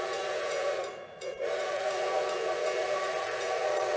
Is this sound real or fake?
fake